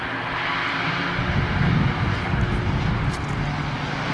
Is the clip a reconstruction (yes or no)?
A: no